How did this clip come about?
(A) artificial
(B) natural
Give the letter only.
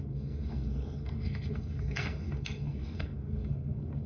A